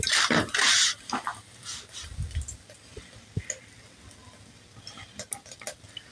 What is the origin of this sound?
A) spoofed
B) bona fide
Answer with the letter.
B